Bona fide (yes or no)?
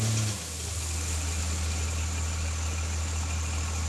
yes